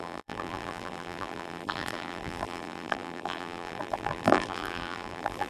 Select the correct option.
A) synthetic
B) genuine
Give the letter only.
A